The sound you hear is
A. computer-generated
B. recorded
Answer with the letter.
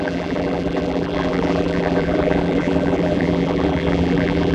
A